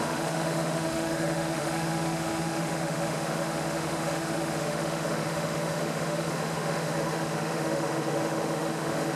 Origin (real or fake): fake